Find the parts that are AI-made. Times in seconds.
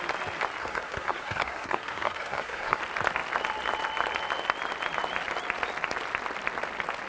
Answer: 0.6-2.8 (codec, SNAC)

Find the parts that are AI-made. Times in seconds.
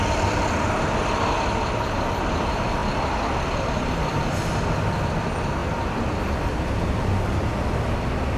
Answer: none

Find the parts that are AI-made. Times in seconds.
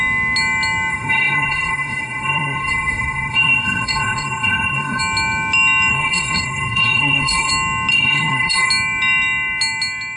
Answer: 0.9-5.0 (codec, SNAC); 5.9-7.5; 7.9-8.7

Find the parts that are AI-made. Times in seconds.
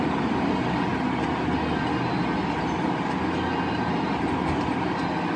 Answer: none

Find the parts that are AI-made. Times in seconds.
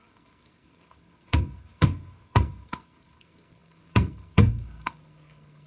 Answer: 0.0-5.7 (codec, SNAC)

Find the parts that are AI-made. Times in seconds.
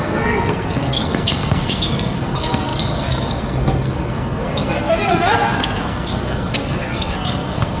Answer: 0.0-7.8 (codec, SNAC)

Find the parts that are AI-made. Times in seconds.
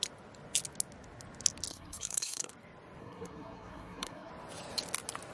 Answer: 1.7-2.5 (codec, SNAC); 3.0-4.3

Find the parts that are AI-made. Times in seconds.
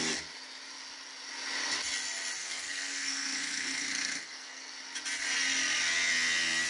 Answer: 2.4-4.7 (codec, SNAC)